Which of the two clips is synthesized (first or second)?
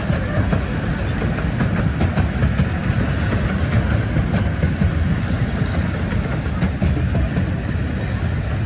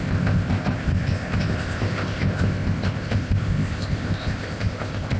second